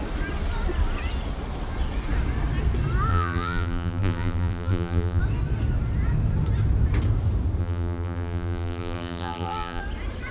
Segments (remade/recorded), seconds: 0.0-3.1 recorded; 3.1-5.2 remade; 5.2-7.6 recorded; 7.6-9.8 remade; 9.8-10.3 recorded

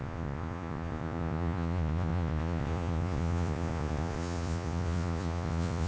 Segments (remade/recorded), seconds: 0.0-5.9 remade

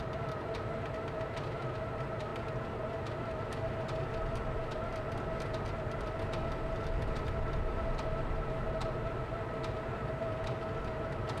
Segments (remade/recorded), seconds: 0.0-11.4 recorded

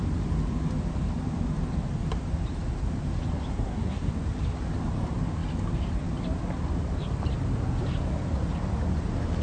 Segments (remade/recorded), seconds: 0.0-3.5 recorded; 3.5-4.1 remade; 4.1-9.4 recorded